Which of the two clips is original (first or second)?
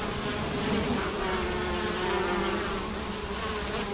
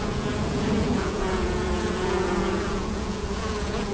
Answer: first